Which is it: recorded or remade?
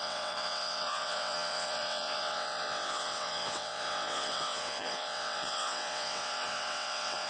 remade